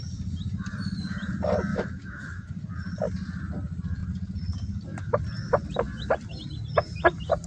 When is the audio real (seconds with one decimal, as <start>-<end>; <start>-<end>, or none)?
0.0-1.7; 2.5-7.5